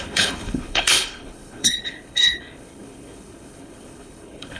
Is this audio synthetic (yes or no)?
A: yes